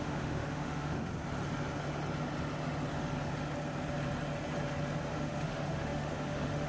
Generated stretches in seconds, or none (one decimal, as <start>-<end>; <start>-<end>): 0.0-1.1; 5.1-6.7